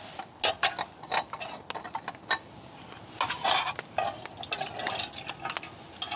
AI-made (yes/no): no